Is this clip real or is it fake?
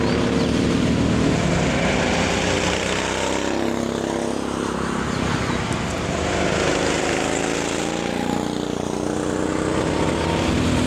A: real